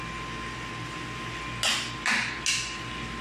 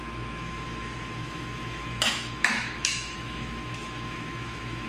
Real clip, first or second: first